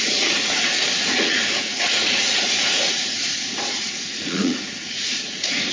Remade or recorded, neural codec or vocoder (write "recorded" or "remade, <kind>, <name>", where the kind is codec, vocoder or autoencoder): remade, vocoder, Vocos